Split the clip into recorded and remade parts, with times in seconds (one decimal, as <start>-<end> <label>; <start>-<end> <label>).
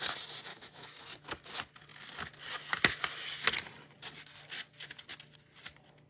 0.0-0.5 recorded; 0.5-1.5 remade; 1.5-6.1 recorded